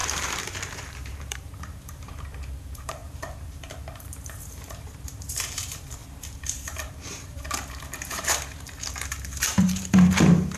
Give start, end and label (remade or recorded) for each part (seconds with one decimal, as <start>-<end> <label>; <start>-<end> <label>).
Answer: 0.0-10.6 remade